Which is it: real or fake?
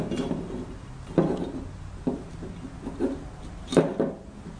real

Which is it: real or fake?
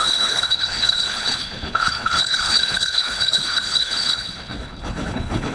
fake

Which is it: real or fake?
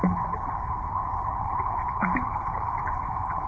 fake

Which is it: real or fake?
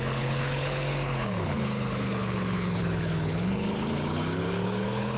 fake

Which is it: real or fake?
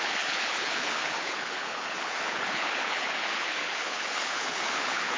fake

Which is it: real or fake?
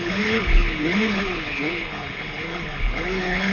fake